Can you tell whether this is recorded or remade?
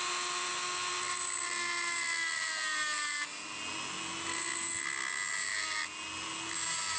recorded